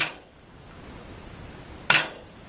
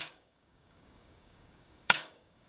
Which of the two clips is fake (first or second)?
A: second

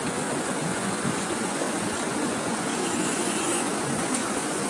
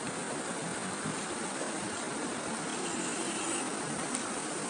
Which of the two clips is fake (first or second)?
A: first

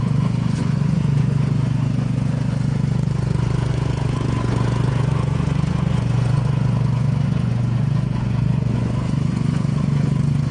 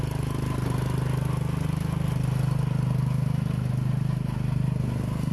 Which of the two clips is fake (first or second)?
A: first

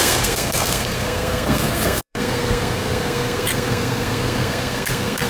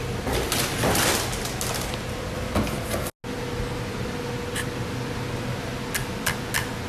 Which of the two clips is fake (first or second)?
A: first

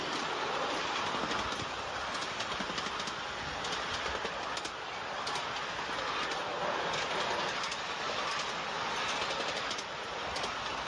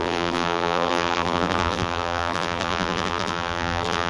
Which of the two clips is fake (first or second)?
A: second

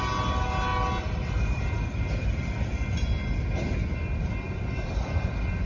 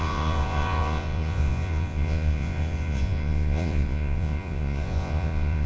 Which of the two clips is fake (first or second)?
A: second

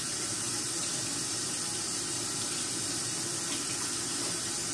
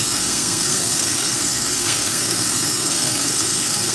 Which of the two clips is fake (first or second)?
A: second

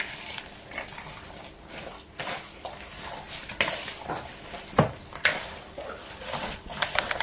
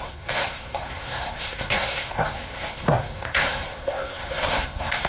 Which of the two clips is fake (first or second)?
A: second